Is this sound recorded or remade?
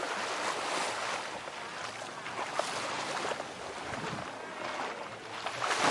recorded